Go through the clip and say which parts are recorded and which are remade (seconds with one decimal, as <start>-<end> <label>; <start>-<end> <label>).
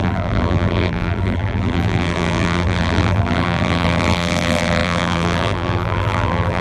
0.0-6.6 remade